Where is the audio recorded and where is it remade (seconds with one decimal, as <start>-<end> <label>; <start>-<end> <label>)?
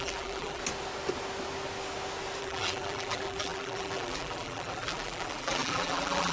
0.0-0.6 remade; 0.6-2.4 recorded; 2.4-6.3 remade